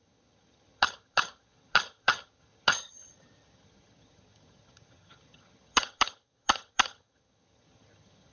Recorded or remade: remade